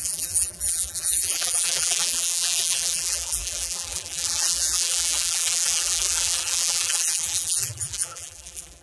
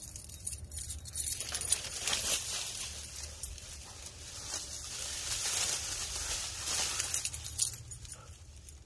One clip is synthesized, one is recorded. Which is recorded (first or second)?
second